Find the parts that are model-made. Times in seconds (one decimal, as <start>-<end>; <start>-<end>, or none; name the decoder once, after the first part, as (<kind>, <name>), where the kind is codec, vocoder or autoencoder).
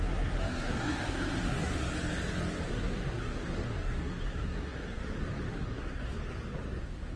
0.0-1.7 (codec, SNAC); 2.7-5.0; 5.5-6.2; 6.8-7.2